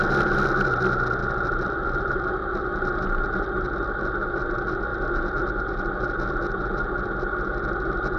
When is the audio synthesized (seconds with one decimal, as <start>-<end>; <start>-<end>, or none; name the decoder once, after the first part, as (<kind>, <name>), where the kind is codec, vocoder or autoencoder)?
none